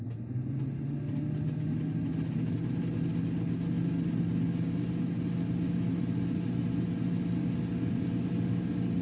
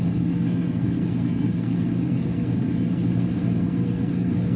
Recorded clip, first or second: first